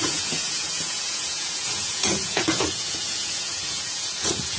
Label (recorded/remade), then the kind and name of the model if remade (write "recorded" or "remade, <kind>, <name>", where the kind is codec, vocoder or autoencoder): remade, vocoder, Vocos